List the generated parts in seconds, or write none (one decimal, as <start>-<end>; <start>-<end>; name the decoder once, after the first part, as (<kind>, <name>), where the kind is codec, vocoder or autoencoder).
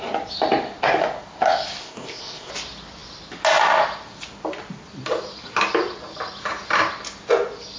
1.8-2.5 (codec, ZipCodec)